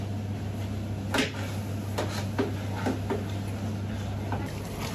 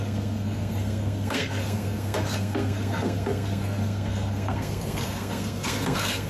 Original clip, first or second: first